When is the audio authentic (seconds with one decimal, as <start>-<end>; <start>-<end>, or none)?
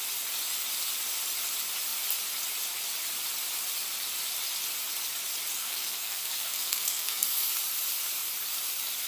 0.0-5.6; 7.5-9.1